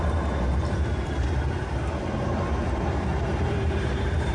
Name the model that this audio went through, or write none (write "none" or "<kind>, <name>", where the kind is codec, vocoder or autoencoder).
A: vocoder, BigVGAN v2